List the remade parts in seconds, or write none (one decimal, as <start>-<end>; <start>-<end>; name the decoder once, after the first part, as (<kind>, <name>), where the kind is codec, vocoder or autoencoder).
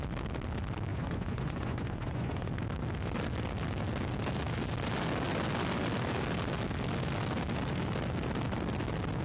0.9-2.5 (vocoder, Vocos)